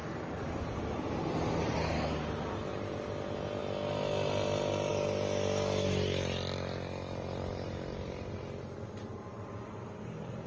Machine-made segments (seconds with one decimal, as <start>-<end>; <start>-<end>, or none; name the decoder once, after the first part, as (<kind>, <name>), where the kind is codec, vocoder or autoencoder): none